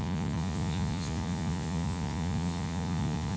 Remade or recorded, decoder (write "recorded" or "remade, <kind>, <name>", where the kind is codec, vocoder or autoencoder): remade, vocoder, Vocos